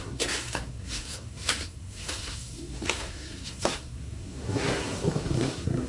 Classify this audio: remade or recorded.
remade